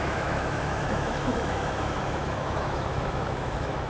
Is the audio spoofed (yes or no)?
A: yes